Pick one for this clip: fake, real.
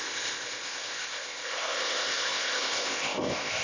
fake